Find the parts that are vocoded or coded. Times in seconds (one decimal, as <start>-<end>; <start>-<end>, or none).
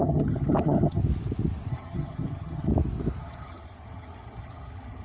0.0-1.0; 1.7-2.7; 3.2-5.0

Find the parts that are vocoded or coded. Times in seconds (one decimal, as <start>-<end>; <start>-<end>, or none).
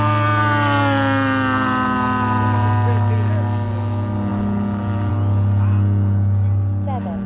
none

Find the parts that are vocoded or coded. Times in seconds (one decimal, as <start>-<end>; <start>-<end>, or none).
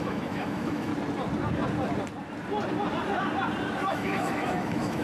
0.0-0.9; 3.9-5.0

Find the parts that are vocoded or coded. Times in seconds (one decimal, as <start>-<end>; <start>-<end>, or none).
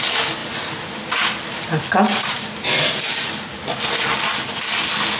0.4-2.9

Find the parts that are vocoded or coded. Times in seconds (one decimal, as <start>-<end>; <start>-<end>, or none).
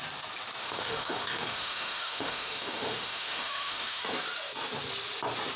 0.6-4.0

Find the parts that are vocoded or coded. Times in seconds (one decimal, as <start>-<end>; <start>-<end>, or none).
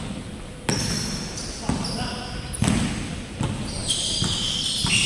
none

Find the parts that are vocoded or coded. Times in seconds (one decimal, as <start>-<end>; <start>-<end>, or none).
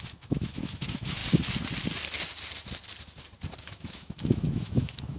0.0-1.2; 3.6-5.2